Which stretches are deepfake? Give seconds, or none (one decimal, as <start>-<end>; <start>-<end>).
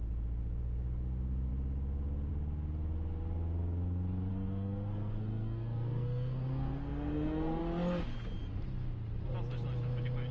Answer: 4.3-7.6